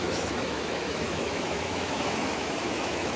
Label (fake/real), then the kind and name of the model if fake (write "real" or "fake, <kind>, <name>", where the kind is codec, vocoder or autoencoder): fake, autoencoder, DAC-VAE